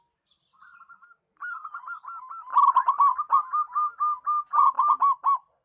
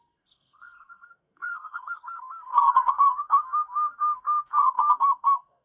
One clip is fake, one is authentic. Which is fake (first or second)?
second